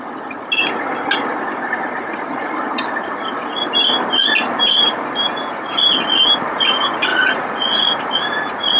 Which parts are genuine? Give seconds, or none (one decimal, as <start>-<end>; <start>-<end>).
0.0-7.1; 7.9-8.8